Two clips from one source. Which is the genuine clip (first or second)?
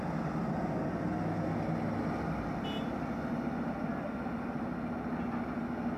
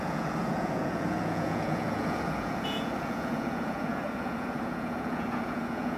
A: first